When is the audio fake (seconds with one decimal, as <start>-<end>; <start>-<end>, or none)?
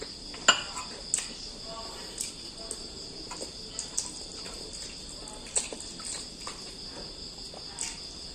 none